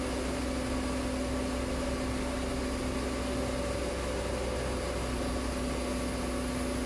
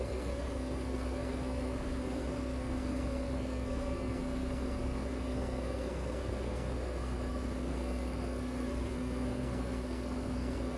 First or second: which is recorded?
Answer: first